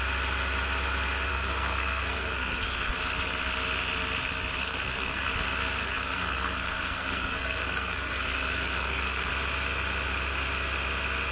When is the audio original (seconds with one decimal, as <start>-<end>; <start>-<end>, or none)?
0.0-1.3; 2.9-4.6; 5.3-5.8; 9.3-11.3